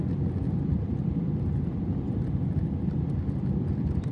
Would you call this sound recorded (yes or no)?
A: yes